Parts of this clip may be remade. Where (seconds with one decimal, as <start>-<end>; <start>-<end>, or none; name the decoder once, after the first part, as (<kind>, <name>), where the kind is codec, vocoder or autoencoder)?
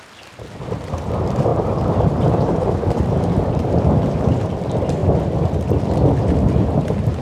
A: 1.5-3.5 (vocoder, BigVGAN v2)